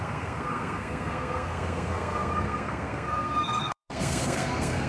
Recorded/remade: remade